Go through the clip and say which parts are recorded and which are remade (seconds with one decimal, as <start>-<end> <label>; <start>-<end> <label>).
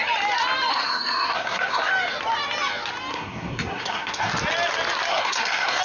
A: 0.0-0.7 recorded; 0.7-1.9 remade; 1.9-3.1 recorded; 3.1-4.3 remade; 4.3-5.1 recorded; 5.1-5.8 remade